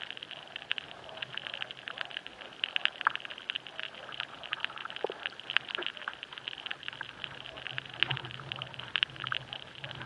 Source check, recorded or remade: recorded